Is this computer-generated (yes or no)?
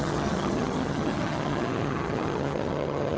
yes